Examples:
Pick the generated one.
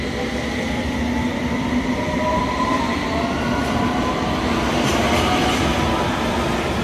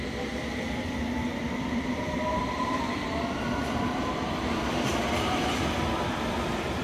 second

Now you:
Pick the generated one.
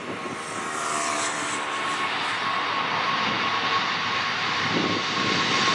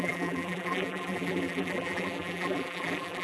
second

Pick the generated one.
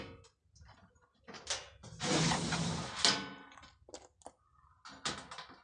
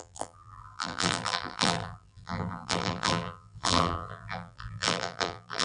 second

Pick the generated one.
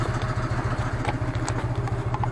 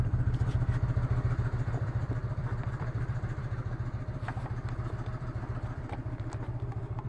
second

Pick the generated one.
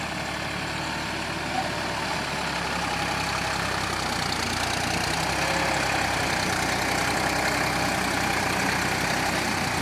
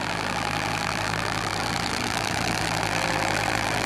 second